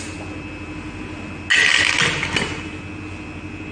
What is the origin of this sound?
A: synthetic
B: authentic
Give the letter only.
B